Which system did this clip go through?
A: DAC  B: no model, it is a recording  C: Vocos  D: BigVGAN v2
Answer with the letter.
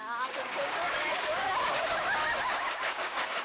A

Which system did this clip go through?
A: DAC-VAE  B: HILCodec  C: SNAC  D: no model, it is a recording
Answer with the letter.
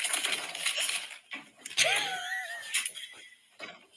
D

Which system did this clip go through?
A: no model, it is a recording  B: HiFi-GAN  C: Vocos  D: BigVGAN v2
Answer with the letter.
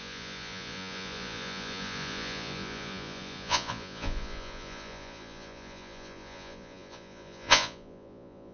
C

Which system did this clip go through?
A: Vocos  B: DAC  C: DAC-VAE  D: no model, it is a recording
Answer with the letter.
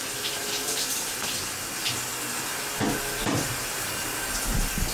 D